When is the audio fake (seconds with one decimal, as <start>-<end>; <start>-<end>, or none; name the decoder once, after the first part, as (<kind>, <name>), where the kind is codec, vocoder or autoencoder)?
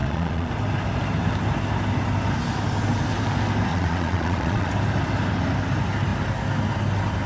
0.0-0.5 (vocoder, Vocos); 3.7-4.7